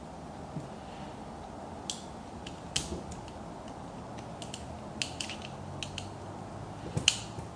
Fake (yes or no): no